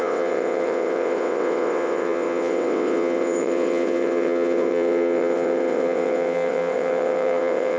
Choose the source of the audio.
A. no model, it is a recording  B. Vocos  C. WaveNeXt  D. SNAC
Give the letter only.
C